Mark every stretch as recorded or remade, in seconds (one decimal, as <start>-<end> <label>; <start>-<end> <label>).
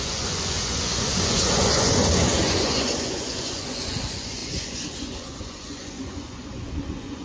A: 0.0-7.2 remade